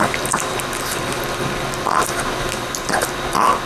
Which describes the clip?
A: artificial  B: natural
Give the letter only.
B